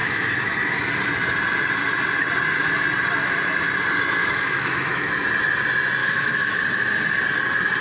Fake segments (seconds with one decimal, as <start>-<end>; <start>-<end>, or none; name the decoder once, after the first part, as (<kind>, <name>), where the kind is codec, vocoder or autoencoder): 0.0-0.5 (autoencoder, DAC-VAE); 4.2-5.1; 6.0-6.6